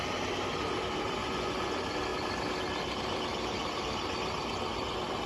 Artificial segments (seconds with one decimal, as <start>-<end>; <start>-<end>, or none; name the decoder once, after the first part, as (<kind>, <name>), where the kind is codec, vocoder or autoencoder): 1.2-1.7 (vocoder, Vocos)